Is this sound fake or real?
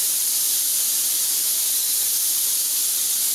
real